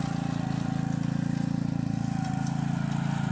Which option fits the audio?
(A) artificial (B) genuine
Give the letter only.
B